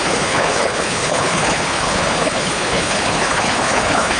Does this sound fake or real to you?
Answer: fake